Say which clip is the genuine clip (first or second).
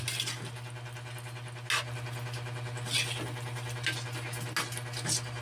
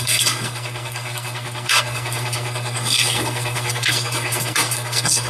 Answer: first